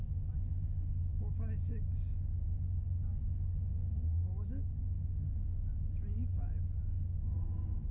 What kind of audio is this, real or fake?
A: real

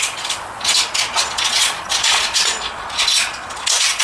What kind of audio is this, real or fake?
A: fake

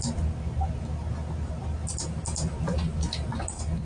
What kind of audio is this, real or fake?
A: real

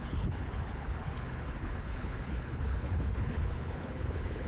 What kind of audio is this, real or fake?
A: fake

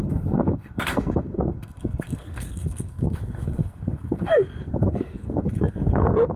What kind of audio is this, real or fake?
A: fake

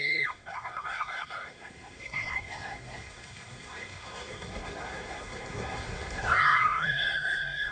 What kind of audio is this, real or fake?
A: fake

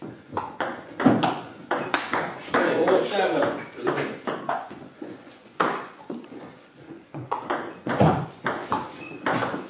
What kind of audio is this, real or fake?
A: fake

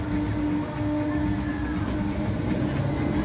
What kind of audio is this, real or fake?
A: real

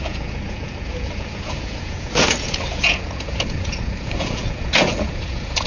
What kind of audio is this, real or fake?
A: fake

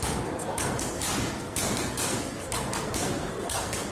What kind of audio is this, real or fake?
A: fake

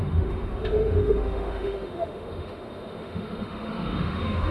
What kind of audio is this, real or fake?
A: fake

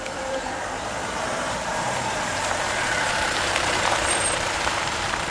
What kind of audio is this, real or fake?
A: fake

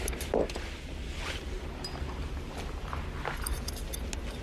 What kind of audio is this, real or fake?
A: real